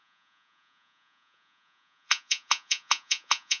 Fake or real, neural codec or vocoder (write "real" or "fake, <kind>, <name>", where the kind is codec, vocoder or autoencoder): fake, vocoder, Vocos